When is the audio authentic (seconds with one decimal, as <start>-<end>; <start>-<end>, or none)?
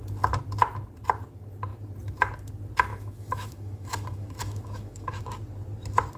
0.0-2.9; 5.3-6.2